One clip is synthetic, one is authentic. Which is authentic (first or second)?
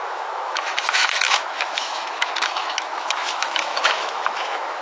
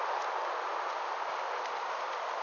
second